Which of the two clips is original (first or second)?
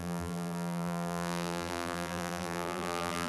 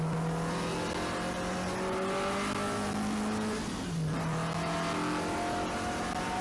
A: second